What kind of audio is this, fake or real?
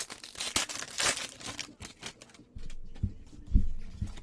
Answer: real